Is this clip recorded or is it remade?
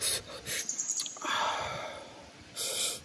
remade